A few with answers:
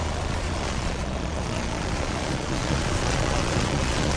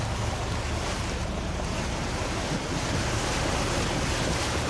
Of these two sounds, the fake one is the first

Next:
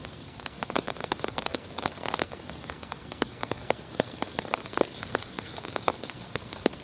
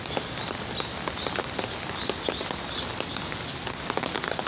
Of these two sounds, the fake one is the first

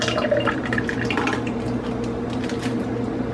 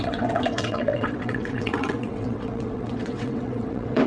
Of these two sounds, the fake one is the second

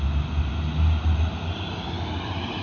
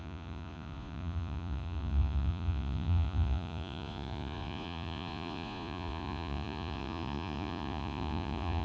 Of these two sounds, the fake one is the second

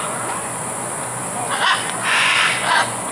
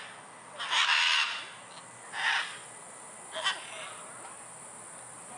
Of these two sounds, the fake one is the first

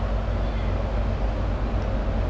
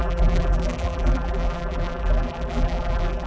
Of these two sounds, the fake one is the second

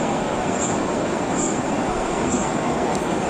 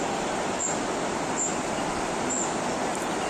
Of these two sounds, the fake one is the first